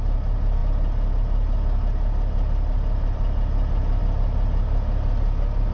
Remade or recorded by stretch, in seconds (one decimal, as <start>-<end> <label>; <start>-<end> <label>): 0.0-5.7 recorded